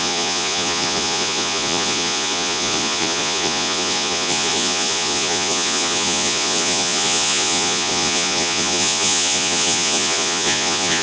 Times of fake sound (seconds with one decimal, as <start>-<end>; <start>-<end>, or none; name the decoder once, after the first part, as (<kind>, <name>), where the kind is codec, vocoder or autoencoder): 0.0-11.0 (vocoder, Vocos)